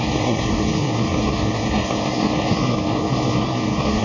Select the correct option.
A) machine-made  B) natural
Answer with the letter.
A